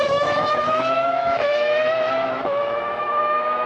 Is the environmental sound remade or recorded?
remade